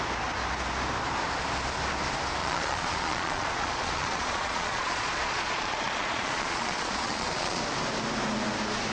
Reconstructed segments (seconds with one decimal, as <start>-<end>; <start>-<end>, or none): 2.4-7.6